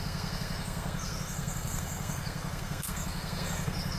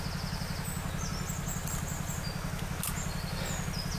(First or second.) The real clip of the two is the second